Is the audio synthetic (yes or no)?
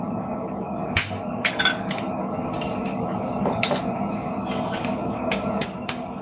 yes